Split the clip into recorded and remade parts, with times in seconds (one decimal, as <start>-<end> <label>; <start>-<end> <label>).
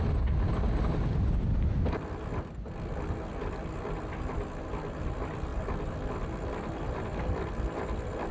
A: 0.0-5.5 recorded; 5.5-6.1 remade; 6.1-8.3 recorded